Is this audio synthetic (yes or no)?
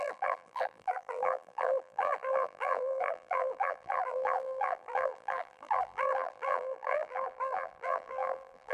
yes